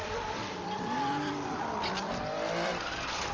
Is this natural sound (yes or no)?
no